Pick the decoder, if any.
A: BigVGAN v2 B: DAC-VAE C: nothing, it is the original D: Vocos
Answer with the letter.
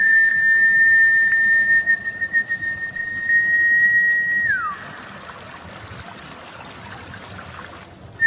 C